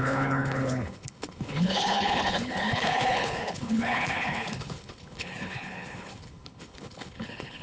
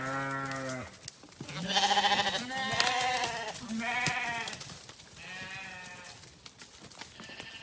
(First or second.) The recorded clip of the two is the second